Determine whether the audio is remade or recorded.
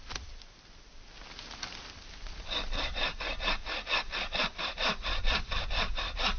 recorded